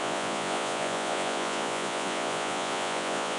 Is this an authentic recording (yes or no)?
no